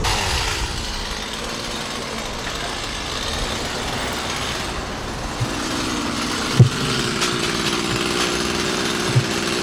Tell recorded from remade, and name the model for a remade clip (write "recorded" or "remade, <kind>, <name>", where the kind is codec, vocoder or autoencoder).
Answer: recorded